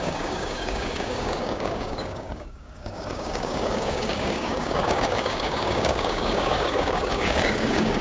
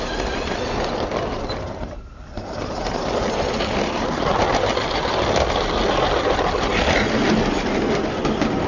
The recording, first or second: second